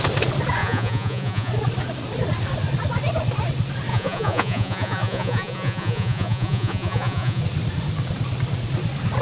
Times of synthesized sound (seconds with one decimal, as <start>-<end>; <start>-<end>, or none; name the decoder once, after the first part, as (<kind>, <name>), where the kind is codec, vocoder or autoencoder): 0.6-1.5 (vocoder, Vocos); 3.9-7.4